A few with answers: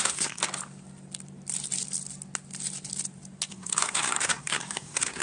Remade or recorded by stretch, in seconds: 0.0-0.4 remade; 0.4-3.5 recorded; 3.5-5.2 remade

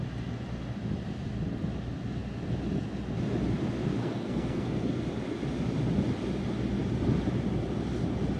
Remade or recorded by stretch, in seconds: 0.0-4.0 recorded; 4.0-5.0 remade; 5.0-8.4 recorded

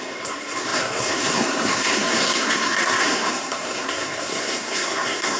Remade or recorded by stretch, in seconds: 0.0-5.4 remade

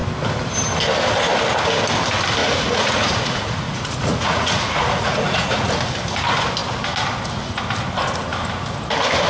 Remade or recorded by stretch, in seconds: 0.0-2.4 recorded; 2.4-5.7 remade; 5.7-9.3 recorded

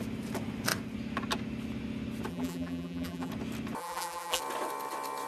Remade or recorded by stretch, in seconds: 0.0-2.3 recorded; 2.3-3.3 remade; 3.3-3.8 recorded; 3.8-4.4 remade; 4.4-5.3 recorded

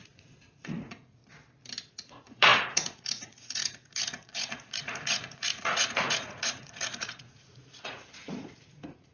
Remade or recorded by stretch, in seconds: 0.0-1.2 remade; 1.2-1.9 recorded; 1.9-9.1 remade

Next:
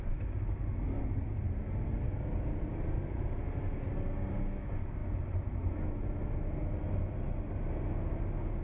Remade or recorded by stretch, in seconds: 0.0-8.6 recorded

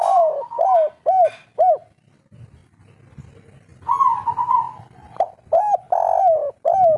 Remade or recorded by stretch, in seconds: 0.0-7.0 recorded